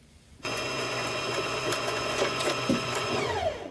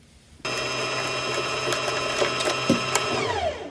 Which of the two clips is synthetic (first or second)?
first